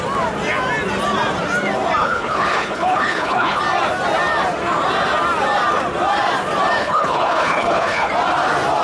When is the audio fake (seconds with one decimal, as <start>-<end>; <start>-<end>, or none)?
2.0-3.6; 6.8-8.1